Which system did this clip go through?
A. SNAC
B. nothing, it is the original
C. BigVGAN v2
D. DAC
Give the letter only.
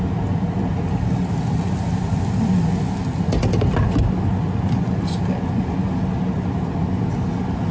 B